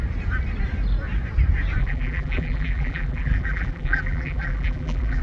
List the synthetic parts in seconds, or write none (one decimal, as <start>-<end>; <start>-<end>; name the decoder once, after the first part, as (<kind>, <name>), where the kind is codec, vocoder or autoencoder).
1.8-5.2 (vocoder, BigVGAN v2)